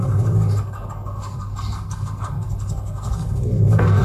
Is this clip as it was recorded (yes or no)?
no